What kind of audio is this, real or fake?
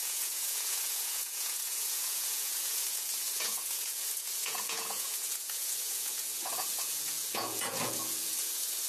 fake